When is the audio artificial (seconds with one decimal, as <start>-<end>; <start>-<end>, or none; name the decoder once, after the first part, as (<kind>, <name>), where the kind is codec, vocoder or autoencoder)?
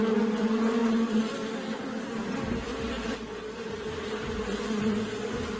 0.8-3.1 (vocoder, BigVGAN v2)